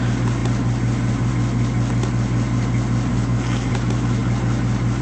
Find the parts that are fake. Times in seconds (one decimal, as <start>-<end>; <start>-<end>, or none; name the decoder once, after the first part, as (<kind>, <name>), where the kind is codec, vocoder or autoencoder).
3.1-3.7 (codec, SNAC)